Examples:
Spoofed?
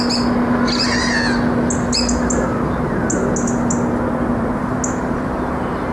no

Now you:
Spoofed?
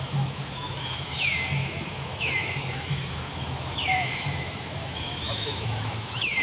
yes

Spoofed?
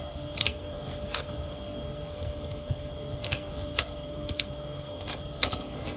yes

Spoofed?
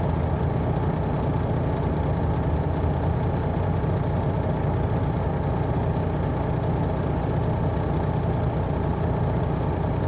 no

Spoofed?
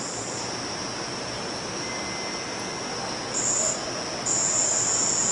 no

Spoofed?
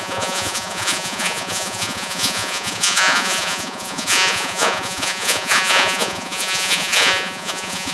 yes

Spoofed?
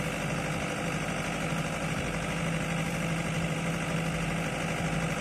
no